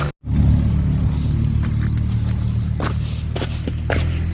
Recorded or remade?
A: recorded